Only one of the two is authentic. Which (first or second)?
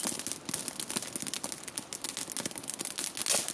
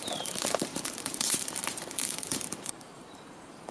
first